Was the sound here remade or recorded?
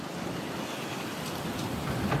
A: recorded